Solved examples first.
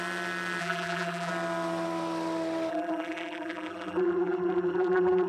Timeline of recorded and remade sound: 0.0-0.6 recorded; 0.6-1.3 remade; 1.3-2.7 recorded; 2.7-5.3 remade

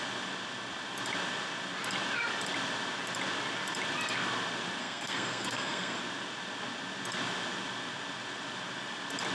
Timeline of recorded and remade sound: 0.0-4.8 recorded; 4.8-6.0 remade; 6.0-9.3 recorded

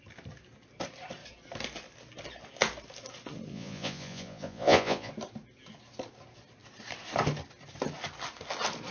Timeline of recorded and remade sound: 0.0-3.5 recorded; 3.5-5.1 remade; 5.1-8.9 recorded

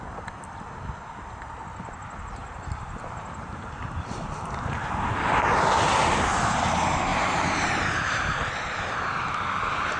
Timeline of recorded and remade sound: 0.0-2.4 recorded; 2.4-5.6 remade; 5.6-7.1 recorded; 7.1-8.5 remade; 8.5-10.0 recorded